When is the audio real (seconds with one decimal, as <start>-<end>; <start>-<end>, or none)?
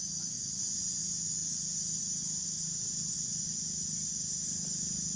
0.0-5.2